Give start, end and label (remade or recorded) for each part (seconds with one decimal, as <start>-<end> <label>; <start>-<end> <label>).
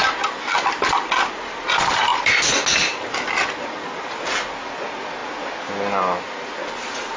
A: 0.0-7.2 recorded